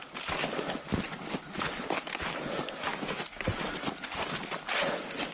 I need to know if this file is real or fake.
real